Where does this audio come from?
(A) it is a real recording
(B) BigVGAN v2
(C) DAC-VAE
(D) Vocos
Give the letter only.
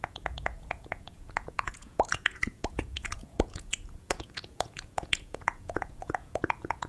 D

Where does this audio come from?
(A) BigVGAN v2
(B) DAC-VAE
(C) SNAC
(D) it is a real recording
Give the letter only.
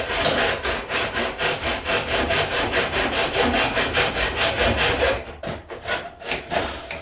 A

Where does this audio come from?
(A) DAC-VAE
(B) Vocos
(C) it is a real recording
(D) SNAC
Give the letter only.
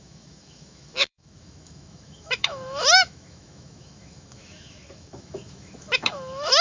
A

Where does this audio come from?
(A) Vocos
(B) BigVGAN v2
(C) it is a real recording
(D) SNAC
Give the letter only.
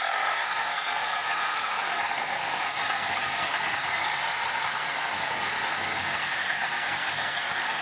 D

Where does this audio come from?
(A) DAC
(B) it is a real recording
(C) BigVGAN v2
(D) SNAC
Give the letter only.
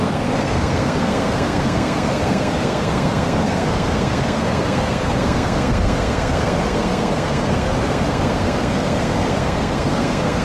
D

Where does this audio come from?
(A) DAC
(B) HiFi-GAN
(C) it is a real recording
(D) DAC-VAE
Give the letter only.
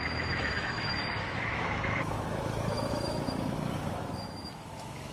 D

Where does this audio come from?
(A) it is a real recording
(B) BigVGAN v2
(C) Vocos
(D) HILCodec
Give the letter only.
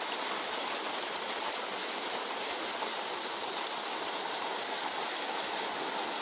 A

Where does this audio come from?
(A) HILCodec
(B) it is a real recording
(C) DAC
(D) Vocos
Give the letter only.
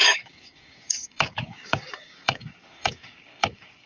C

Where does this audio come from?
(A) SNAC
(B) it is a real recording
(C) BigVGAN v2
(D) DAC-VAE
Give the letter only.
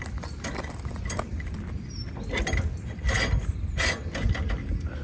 B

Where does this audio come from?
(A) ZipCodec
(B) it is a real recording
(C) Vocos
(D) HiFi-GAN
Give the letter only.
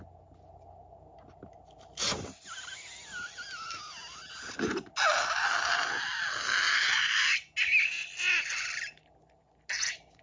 B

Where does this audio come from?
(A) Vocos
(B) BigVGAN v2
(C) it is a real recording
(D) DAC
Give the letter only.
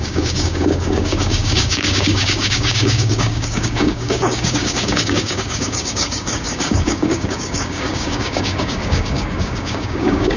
D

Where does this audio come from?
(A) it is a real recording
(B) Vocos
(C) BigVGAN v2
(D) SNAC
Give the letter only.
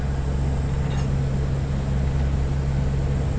A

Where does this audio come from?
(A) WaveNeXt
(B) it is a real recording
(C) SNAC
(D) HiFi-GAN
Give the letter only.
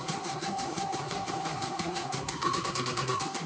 C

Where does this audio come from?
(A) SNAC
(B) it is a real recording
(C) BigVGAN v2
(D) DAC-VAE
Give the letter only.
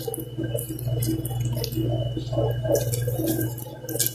B